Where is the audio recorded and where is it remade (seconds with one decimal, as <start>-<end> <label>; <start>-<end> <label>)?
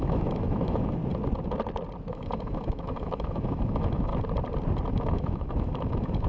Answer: 0.0-1.0 remade; 1.0-2.1 recorded; 2.1-4.1 remade; 4.1-4.9 recorded; 4.9-6.3 remade